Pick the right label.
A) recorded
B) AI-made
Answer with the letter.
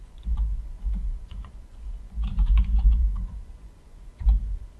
B